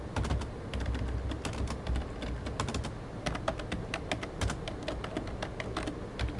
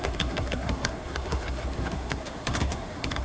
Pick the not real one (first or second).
second